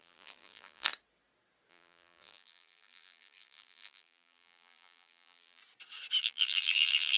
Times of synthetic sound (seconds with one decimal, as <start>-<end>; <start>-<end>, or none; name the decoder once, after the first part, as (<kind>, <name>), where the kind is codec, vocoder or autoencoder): 0.0-0.9 (vocoder, BigVGAN v2); 1.7-5.6; 6.2-7.2